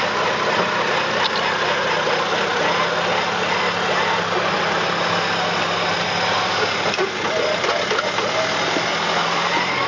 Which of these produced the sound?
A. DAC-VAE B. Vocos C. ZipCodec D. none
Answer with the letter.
D